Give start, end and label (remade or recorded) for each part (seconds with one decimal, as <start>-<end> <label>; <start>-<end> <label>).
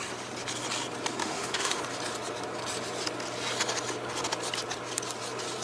0.0-1.2 recorded; 1.2-1.8 remade; 1.8-5.6 recorded